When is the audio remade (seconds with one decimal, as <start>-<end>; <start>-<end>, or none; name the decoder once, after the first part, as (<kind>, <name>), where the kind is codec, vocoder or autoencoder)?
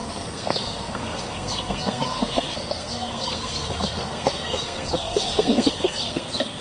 0.0-6.6 (codec, SNAC)